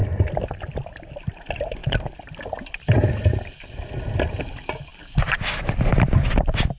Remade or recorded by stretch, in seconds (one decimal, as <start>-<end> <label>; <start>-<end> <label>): 0.0-6.8 recorded